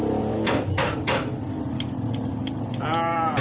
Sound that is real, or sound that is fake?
real